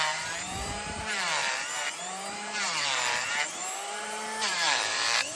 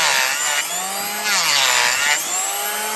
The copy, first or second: first